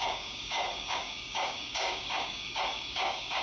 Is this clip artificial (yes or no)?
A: yes